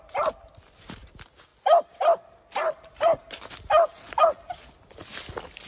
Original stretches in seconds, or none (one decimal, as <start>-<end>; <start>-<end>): 0.0-5.7